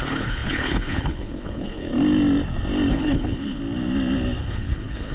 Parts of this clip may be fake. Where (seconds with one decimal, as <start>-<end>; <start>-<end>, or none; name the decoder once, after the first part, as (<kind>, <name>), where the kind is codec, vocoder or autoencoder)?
0.0-1.9 (codec, HILCodec); 2.9-3.6; 4.4-5.1